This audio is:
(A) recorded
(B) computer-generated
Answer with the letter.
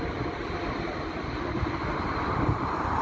A